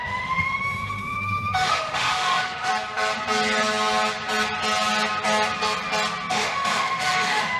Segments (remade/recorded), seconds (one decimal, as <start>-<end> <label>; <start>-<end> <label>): 0.0-2.7 remade; 2.7-6.3 recorded; 6.3-7.6 remade